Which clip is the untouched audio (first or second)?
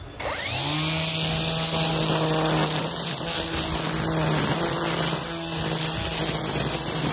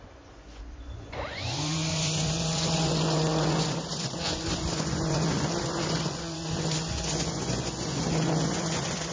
first